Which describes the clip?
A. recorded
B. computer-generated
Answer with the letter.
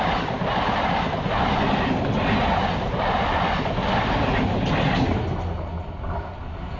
A